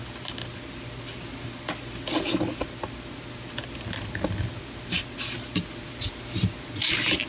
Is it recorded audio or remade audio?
recorded